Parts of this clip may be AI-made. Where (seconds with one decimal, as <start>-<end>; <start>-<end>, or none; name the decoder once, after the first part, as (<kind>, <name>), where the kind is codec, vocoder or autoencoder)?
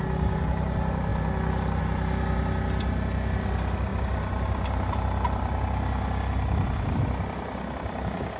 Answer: none